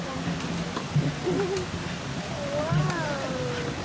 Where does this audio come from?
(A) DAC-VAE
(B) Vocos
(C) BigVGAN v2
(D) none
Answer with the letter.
D